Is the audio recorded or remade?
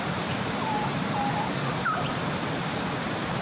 remade